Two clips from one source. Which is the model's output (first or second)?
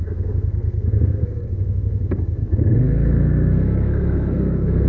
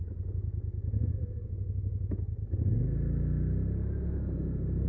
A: first